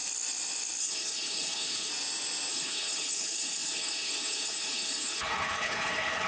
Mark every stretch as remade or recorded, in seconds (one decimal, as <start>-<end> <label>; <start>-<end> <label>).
0.0-0.8 recorded; 0.8-1.9 remade; 1.9-2.5 recorded; 2.5-6.3 remade

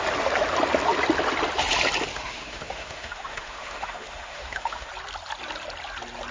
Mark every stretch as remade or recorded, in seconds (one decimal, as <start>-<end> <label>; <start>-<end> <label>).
0.0-2.1 recorded; 2.1-4.9 remade; 4.9-6.3 recorded

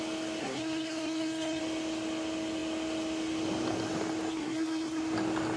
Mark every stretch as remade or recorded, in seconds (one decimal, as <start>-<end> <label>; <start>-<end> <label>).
0.0-0.4 recorded; 0.4-1.6 remade; 1.6-4.3 recorded; 4.3-5.0 remade; 5.0-5.6 recorded

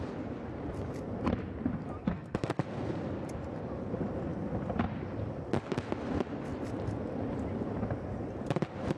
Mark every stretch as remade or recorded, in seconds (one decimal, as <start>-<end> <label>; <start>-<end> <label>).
0.0-2.0 recorded; 2.0-2.5 remade; 2.5-9.0 recorded

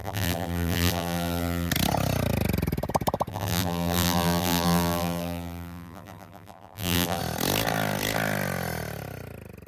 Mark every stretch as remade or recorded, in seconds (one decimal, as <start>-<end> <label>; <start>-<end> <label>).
0.0-1.7 remade; 1.7-3.3 recorded; 3.3-7.2 remade; 7.2-9.7 recorded